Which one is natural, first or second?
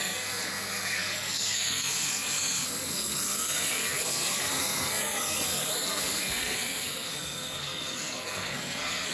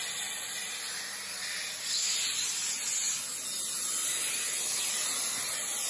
second